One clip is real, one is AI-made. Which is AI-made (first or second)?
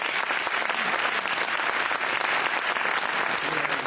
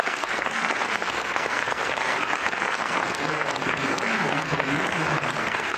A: second